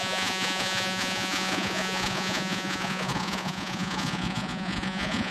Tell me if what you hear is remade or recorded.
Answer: remade